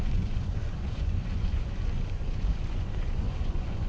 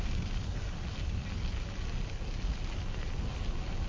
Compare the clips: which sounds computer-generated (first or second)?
first